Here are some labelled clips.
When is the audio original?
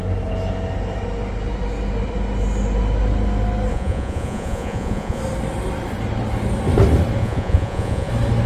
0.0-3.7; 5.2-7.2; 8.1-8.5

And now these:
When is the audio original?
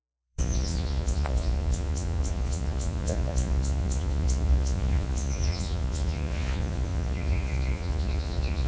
none